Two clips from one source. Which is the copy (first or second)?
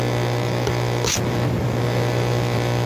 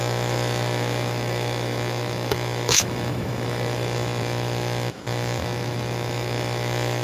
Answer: second